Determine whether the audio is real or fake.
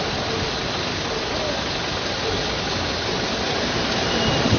real